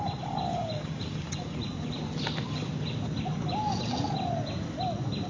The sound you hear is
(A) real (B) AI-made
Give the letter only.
A